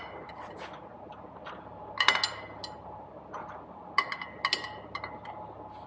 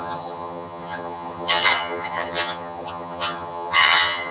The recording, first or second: first